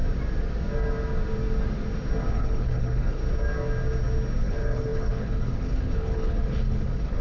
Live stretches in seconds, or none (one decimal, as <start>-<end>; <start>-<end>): 0.0-2.3; 3.2-4.4